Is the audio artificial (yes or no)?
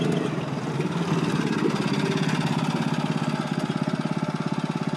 no